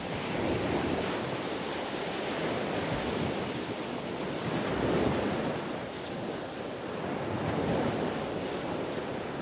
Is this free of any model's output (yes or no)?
yes